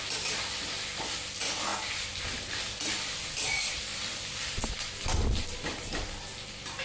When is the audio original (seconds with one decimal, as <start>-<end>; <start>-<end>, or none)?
0.0-6.8

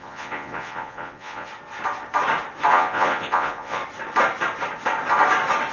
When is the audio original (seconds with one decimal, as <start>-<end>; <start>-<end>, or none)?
1.5-2.7; 3.8-5.7

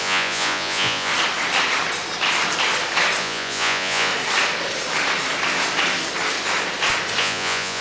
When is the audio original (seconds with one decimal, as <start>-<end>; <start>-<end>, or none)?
1.1-3.2; 4.1-7.2

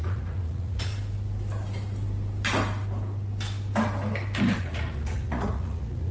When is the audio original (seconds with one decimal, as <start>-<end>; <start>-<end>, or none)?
0.9-4.6

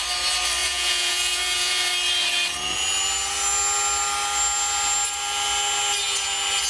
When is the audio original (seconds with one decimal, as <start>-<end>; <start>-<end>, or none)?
0.0-0.6; 1.9-6.7

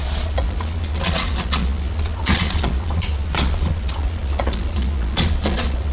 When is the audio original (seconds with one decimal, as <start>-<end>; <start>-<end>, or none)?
none

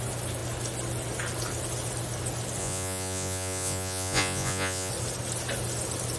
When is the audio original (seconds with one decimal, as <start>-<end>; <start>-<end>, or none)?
0.0-2.6; 4.9-6.2